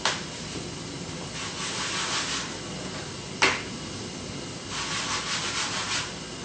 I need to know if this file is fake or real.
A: real